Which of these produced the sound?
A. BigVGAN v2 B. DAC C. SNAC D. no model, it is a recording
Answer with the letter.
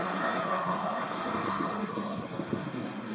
C